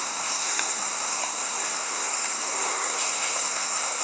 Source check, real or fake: fake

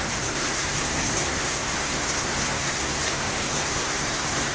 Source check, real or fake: fake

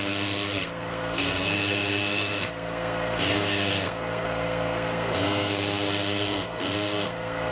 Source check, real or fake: fake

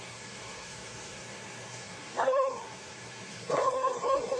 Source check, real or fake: fake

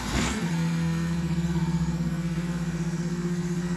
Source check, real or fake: fake